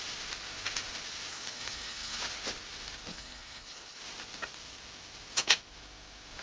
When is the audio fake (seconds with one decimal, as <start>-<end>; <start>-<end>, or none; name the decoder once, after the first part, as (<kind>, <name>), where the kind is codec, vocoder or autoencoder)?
1.3-2.2 (codec, HILCodec); 3.1-4.0